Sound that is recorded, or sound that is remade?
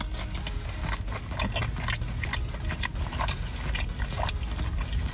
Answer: recorded